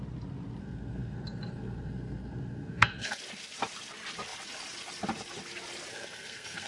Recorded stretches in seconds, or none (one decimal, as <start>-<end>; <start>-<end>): 0.0-0.6; 3.2-5.9